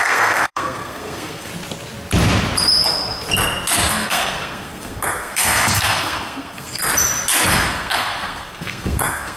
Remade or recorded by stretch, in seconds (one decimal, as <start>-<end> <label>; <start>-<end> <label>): 0.0-1.5 remade; 1.5-3.9 recorded; 3.9-6.8 remade; 6.8-7.5 recorded; 7.5-9.4 remade